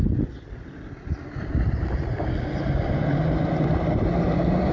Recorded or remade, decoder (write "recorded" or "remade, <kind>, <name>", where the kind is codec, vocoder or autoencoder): recorded